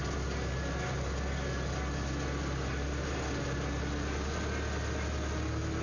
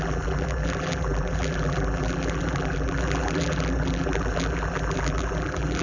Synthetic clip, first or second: second